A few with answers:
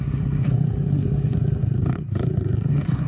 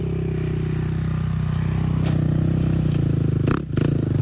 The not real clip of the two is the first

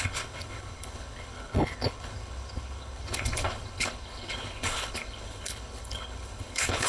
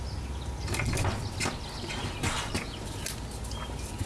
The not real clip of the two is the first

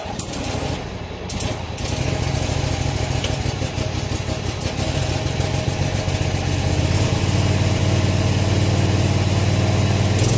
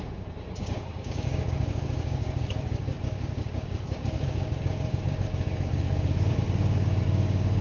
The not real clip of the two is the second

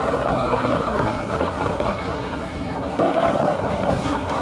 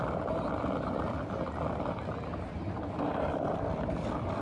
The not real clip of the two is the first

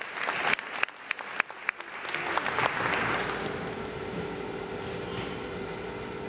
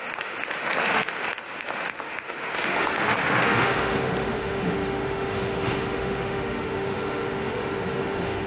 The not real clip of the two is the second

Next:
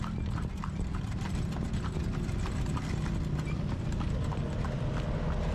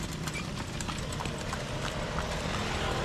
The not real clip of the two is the second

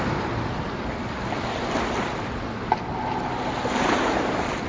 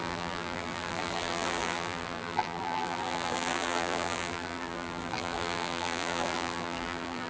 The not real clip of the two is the second